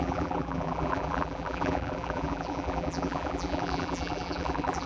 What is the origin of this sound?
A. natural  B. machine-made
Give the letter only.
B